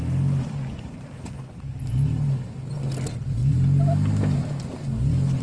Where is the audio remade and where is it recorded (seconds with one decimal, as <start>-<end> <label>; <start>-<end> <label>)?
0.0-5.4 recorded